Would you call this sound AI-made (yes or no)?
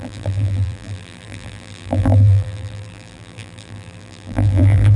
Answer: yes